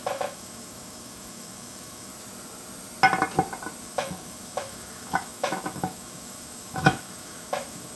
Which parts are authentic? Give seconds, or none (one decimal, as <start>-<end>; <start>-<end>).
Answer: 2.1-3.8